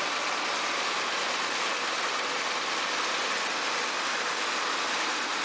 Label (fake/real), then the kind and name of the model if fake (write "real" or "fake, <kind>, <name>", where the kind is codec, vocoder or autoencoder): real